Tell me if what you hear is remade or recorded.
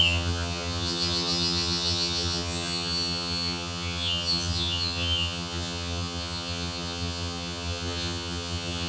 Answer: remade